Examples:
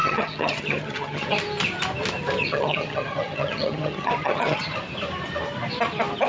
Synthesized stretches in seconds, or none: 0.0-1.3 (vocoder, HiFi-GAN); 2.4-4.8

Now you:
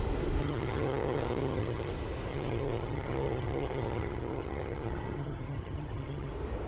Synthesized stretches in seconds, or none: 0.4-1.9 (vocoder, HiFi-GAN); 2.3-6.3